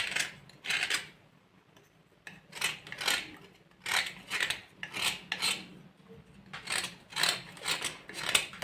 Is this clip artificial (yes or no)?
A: no